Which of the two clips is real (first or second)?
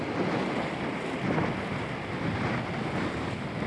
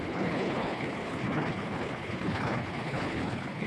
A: first